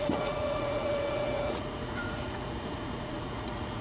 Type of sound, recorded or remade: remade